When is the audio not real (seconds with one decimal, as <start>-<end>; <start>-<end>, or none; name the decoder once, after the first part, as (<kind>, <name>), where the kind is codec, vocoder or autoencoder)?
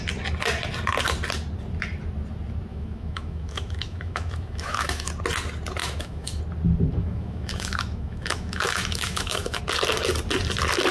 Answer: 2.7-5.1 (autoencoder, DAC-VAE); 5.8-6.4; 7.0-9.6